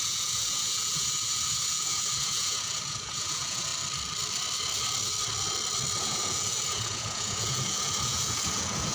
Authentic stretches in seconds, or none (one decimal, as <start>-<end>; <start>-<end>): 3.7-6.0